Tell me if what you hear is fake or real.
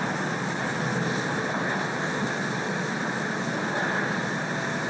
real